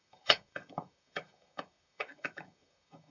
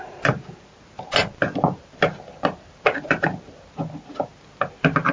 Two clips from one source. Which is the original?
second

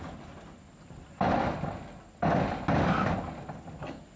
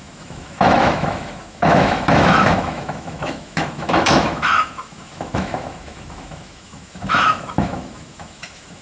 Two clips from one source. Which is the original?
first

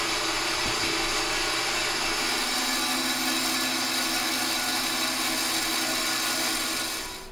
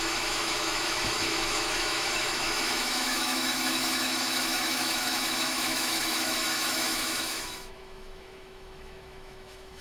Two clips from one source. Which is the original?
first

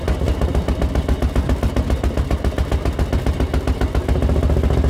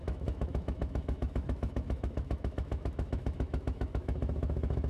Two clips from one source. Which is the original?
first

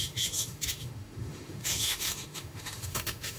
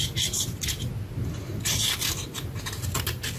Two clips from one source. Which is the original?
second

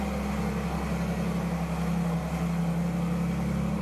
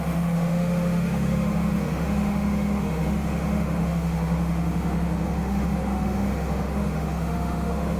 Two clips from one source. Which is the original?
first